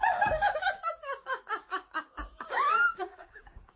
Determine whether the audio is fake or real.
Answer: fake